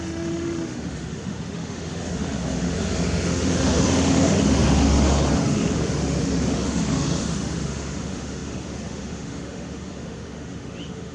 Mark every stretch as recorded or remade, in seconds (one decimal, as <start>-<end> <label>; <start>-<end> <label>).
0.0-11.1 remade